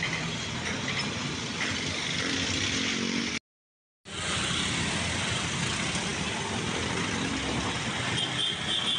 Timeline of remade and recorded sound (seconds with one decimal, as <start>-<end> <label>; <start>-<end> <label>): 0.0-9.0 recorded